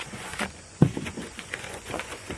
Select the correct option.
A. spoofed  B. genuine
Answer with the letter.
A